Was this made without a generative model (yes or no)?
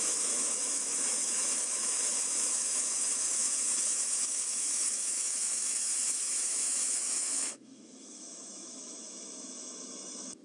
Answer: no